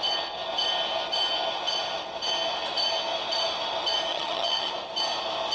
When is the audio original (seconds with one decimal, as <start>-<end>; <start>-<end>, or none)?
0.0-4.1; 4.7-5.5